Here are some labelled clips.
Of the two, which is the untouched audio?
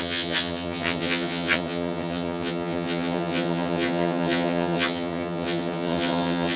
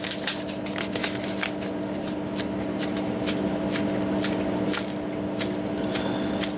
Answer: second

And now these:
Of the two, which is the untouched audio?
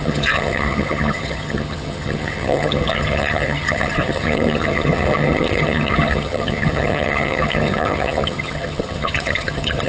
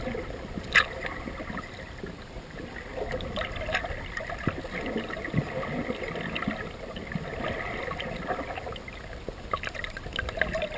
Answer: second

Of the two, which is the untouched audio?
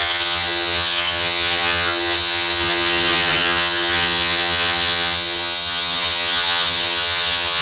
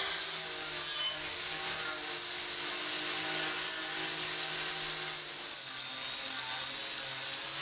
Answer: second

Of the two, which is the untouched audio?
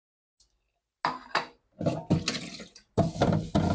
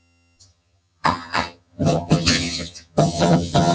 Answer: first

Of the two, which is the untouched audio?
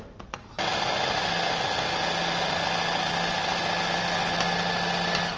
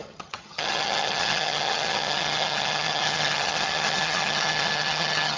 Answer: first